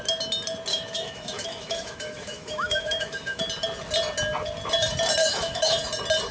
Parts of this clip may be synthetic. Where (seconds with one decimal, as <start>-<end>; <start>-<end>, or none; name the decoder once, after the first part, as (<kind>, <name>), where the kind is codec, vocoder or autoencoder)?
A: 0.7-3.4 (autoencoder, DAC-VAE); 5.2-5.8